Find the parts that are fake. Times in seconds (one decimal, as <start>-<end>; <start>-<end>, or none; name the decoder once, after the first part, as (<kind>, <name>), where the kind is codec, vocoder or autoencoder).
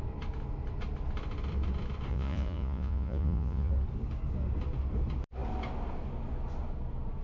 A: 2.1-3.7 (vocoder, Vocos)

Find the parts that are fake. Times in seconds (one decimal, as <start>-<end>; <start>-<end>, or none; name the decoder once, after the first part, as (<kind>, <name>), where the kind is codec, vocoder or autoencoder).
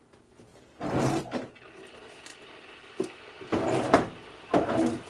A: none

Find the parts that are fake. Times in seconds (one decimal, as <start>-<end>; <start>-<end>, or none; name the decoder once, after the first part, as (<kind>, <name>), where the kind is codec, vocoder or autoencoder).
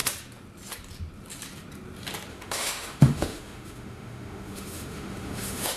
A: 2.3-5.8 (autoencoder, DAC-VAE)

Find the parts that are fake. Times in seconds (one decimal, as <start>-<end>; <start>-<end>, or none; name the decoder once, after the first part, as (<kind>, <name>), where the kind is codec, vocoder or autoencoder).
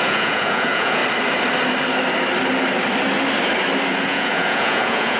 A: 0.0-1.0 (vocoder, Vocos); 4.1-5.2